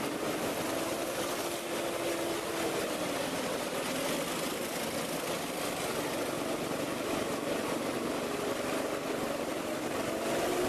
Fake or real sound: real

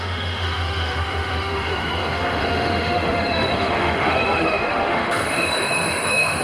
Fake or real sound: fake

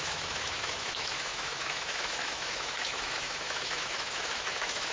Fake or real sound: fake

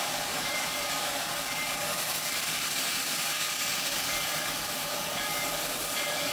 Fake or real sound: fake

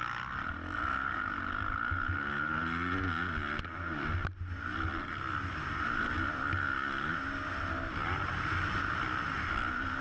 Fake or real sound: real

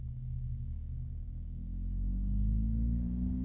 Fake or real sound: fake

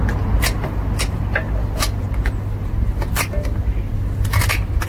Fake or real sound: real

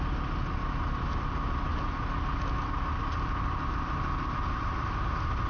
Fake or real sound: real